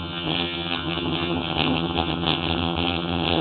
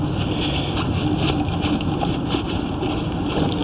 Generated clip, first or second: first